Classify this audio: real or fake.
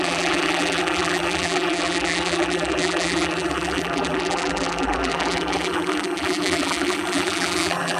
fake